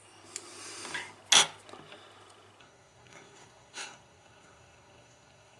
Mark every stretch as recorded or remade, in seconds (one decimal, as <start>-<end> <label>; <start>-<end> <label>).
0.0-2.6 recorded; 2.6-5.6 remade